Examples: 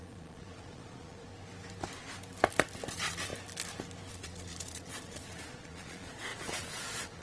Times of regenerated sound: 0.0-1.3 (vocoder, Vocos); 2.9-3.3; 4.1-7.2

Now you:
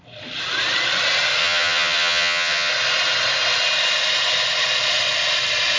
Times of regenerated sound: 1.4-2.7 (vocoder, HiFi-GAN)